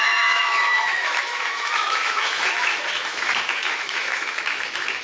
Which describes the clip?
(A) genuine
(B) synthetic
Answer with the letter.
B